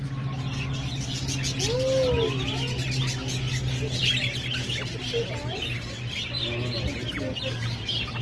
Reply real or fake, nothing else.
real